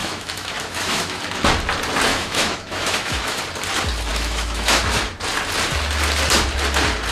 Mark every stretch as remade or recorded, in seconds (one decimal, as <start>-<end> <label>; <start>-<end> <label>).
0.0-1.2 remade; 1.2-2.1 recorded; 2.1-3.4 remade; 3.4-4.1 recorded; 4.1-4.8 remade; 4.8-7.1 recorded